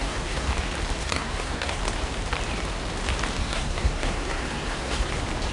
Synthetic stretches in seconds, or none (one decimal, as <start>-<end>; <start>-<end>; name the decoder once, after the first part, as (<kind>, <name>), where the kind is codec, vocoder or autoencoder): 0.0-0.5 (codec, SNAC); 1.0-1.8; 3.4-5.1